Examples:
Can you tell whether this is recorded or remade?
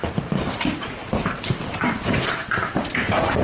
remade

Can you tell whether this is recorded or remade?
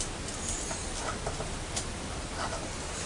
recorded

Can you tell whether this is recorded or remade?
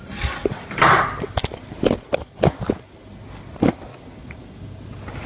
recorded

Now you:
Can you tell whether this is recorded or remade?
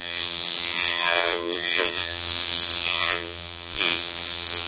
remade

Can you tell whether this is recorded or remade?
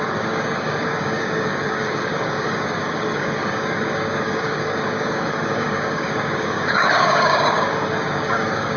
remade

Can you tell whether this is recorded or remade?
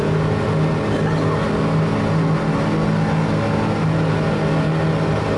recorded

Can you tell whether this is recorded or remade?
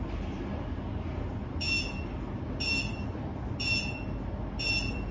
recorded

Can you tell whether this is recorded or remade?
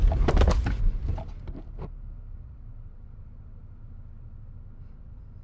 recorded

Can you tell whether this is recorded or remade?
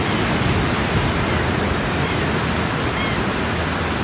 recorded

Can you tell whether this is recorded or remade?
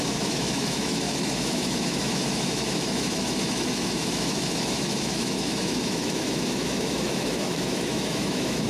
remade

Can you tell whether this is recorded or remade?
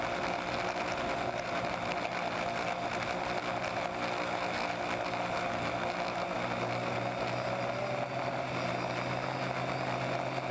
recorded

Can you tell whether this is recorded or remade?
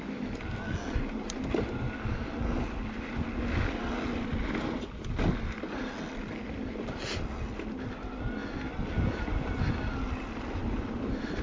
recorded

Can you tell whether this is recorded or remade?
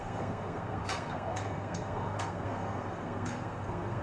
remade